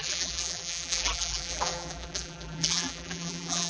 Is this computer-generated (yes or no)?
yes